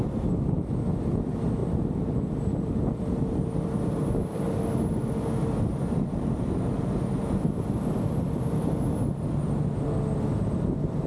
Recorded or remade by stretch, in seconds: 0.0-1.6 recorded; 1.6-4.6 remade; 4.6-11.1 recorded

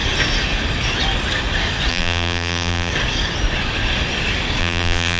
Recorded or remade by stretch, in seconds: 0.0-1.9 recorded; 1.9-2.9 remade; 2.9-4.6 recorded; 4.6-5.2 remade